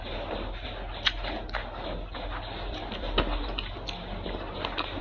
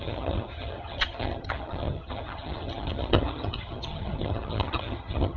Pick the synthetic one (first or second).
second